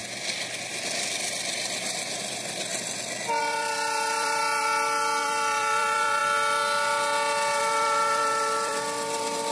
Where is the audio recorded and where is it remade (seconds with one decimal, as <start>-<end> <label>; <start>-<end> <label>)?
0.0-0.6 recorded; 0.6-2.7 remade; 2.7-3.4 recorded; 3.4-4.7 remade; 4.7-5.2 recorded; 5.2-6.2 remade; 6.2-7.6 recorded; 7.6-9.5 remade